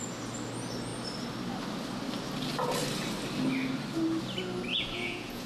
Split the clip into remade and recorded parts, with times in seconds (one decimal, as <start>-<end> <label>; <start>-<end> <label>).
0.0-4.7 recorded; 4.7-5.5 remade